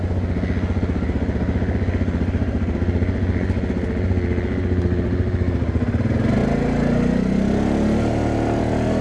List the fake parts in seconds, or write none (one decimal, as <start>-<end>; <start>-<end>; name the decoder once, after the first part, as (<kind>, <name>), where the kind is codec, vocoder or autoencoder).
none